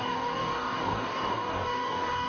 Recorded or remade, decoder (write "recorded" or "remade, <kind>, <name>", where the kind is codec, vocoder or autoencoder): remade, codec, DAC